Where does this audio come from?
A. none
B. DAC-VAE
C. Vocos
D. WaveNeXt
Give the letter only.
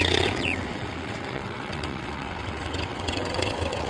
D